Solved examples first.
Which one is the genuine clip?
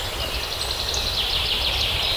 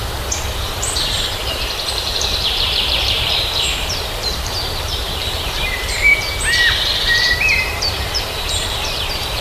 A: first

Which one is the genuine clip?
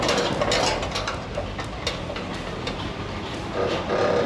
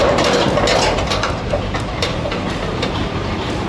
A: first